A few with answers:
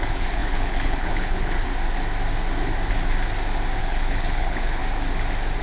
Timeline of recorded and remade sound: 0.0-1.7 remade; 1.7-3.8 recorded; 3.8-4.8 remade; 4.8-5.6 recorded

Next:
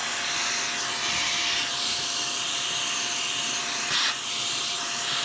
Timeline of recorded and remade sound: 0.0-1.5 recorded; 1.5-5.2 remade

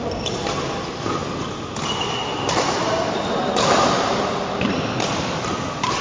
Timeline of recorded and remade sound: 0.0-2.2 recorded; 2.2-4.2 remade; 4.2-6.0 recorded